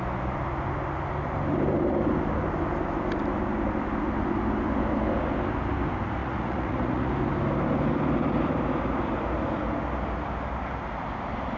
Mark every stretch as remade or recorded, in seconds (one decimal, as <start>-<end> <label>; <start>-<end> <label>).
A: 0.0-6.2 recorded; 6.2-7.1 remade; 7.1-11.6 recorded